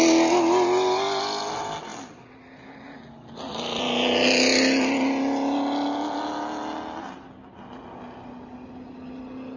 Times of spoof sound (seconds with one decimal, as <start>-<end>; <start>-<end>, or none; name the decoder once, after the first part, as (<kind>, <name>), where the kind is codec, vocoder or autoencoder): none